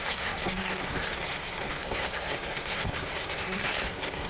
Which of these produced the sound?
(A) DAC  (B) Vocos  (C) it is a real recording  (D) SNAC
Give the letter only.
D